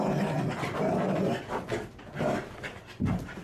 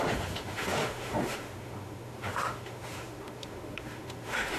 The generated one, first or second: second